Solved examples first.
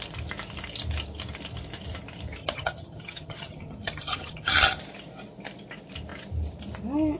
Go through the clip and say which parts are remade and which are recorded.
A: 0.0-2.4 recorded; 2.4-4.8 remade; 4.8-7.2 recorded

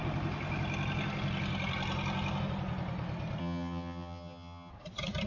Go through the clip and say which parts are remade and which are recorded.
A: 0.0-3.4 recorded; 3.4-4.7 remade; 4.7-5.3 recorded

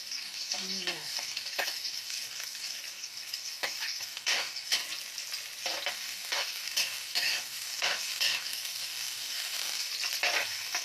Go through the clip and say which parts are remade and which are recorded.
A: 0.0-4.8 remade; 4.8-5.9 recorded; 5.9-9.9 remade; 9.9-10.4 recorded; 10.4-10.8 remade

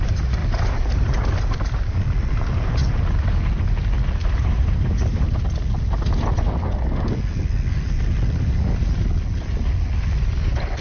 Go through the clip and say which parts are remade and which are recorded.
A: 0.0-0.4 recorded; 0.4-1.7 remade; 1.7-4.2 recorded; 4.2-5.4 remade; 5.4-10.8 recorded